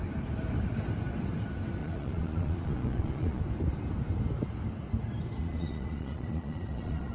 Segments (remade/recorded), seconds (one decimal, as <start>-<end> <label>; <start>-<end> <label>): 0.0-1.8 recorded; 1.8-3.4 remade; 3.4-5.4 recorded; 5.4-7.1 remade